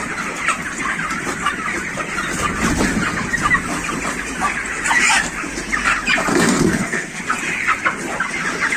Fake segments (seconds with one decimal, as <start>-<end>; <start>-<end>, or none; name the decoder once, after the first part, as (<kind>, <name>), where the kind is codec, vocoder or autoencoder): 6.3-7.2 (codec, SNAC)